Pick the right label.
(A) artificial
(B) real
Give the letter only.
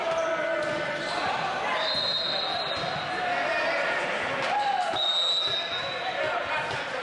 B